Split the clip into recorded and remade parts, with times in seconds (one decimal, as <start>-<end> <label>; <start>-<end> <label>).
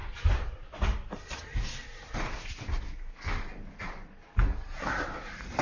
0.0-5.6 recorded